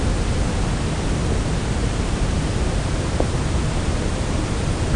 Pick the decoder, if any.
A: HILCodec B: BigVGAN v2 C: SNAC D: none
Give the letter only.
D